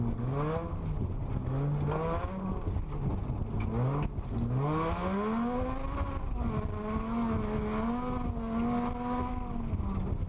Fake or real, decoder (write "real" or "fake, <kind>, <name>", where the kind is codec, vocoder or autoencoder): real